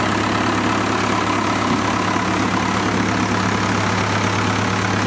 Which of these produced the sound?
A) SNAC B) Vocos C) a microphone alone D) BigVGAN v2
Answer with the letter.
C